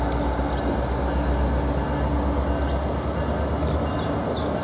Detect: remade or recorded recorded